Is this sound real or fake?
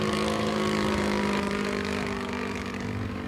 fake